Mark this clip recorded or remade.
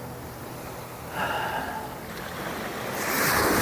recorded